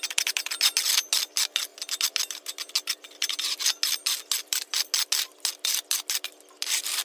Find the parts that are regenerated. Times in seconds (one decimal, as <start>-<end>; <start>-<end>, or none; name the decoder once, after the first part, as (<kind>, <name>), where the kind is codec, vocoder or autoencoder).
none

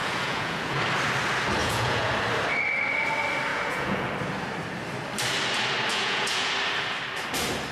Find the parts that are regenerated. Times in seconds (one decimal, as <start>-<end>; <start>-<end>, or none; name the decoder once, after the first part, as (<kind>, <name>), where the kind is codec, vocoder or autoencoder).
0.0-0.8 (vocoder, Vocos); 1.6-2.1; 3.5-4.1; 5.9-6.5

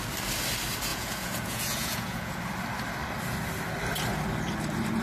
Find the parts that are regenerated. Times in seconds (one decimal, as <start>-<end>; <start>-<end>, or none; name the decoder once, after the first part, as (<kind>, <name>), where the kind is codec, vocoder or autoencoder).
0.9-2.4 (vocoder, Vocos)

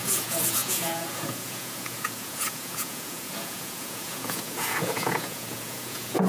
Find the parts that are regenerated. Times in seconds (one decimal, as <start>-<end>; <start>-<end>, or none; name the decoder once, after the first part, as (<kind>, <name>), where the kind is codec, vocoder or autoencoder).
0.0-6.3 (vocoder, Vocos)